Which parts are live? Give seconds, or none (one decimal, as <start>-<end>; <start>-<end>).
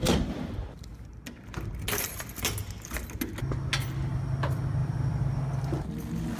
0.0-4.8; 5.3-6.4